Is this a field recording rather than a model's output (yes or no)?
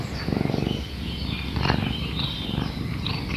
yes